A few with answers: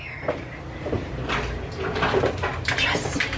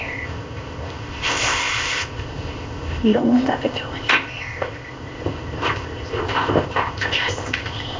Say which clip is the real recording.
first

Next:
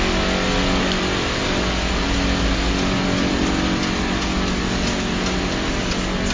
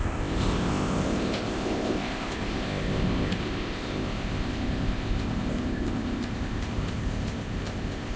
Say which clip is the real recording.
first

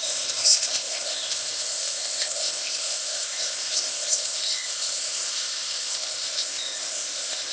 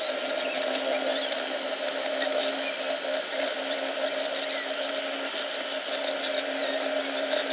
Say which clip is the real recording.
second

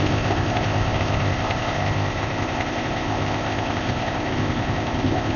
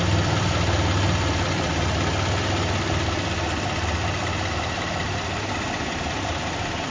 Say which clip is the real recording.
second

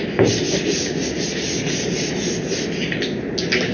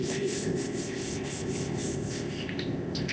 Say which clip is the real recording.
first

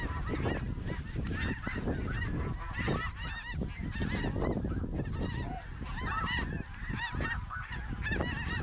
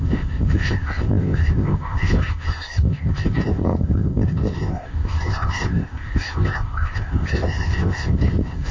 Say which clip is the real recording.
first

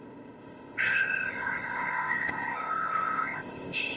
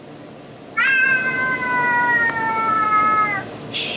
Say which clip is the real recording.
second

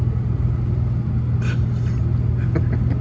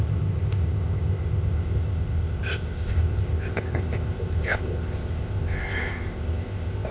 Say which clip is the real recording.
first